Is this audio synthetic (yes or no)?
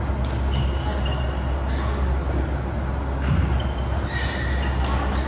no